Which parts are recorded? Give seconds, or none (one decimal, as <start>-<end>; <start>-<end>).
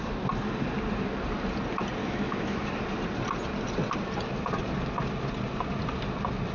0.0-2.0; 2.7-6.5